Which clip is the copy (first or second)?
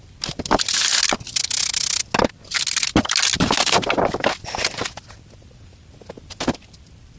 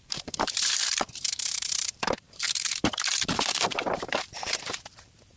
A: second